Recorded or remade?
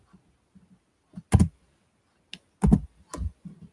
recorded